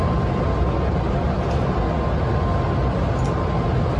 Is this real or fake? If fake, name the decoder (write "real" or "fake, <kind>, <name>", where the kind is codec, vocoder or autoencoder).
real